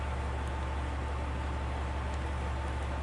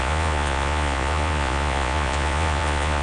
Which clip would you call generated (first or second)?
second